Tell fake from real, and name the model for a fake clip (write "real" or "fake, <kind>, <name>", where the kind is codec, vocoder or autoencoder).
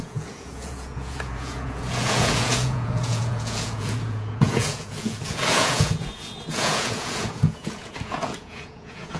fake, vocoder, Vocos